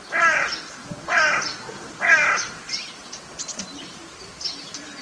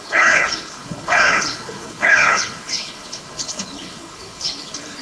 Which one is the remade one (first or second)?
second